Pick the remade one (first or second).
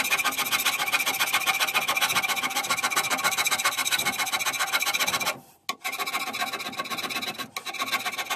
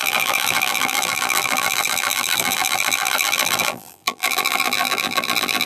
second